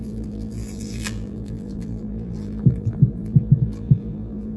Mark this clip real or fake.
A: fake